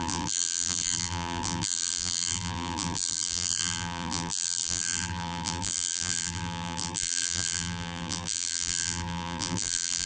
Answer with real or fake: fake